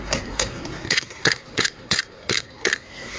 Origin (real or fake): fake